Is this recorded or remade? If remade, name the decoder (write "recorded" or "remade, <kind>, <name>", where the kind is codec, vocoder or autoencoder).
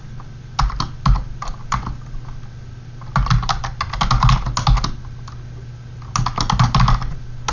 recorded